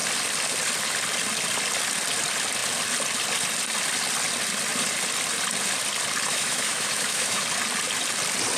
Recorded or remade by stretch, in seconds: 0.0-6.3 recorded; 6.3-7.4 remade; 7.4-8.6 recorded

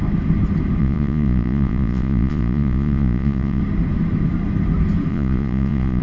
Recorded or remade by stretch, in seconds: 0.0-0.8 recorded; 0.8-3.6 remade; 3.6-5.1 recorded; 5.1-6.0 remade

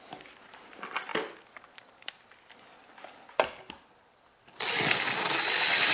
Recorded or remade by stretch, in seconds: 0.0-5.9 recorded

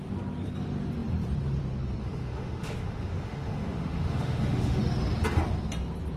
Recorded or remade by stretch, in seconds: 0.0-2.0 recorded; 2.0-4.8 remade; 4.8-6.2 recorded

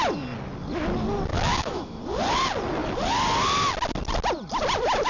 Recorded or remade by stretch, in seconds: 0.0-1.3 recorded; 1.3-2.0 remade; 2.0-5.1 recorded

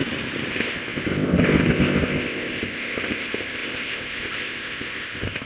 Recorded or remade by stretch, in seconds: 0.0-0.5 recorded; 0.5-5.5 remade

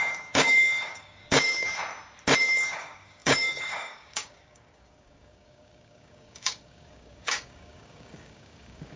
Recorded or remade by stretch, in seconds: 0.0-1.8 remade; 1.8-2.4 recorded; 2.4-9.0 remade

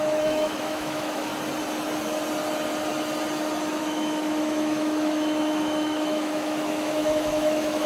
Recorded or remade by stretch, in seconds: 0.0-1.3 remade; 1.3-3.8 recorded; 3.8-7.9 remade